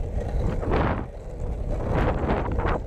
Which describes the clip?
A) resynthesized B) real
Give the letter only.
B